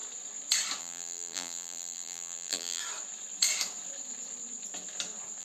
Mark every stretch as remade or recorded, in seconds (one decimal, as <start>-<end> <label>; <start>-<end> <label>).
0.0-0.8 recorded; 0.8-2.8 remade; 2.8-5.4 recorded